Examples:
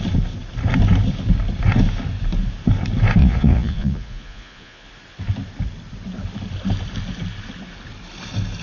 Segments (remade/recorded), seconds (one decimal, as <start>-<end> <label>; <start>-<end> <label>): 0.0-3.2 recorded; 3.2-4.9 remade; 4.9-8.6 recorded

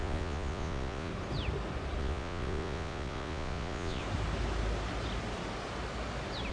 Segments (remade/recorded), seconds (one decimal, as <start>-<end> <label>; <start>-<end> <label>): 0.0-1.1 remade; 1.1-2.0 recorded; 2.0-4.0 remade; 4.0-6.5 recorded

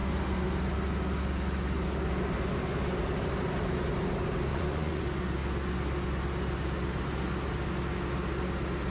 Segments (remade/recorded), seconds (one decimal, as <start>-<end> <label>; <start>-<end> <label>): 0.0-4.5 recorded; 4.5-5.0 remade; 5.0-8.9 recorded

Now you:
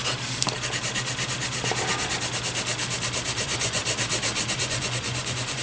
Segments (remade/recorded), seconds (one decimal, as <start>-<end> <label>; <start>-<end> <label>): 0.0-3.4 recorded; 3.4-3.8 remade; 3.8-4.5 recorded; 4.5-5.6 remade